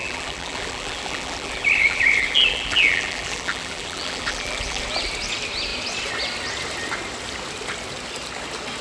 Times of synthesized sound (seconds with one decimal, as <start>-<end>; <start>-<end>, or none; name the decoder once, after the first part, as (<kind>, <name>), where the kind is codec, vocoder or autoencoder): 0.0-4.8 (vocoder, BigVGAN v2)